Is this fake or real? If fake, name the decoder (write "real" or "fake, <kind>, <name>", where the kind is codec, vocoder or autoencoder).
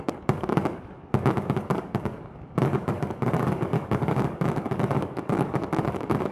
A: fake, codec, DAC